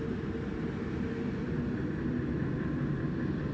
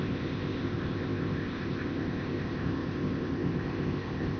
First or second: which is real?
first